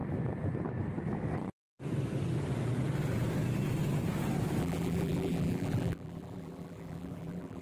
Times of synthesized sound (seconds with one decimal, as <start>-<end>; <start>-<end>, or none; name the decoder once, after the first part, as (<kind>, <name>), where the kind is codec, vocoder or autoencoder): 4.6-7.6 (vocoder, BigVGAN v2)

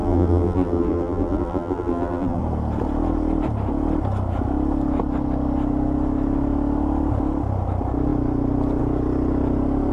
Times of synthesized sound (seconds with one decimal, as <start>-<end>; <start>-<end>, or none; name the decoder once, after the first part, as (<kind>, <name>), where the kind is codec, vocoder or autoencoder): 0.0-2.4 (vocoder, BigVGAN v2)